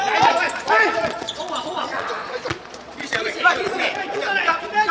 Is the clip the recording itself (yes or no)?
no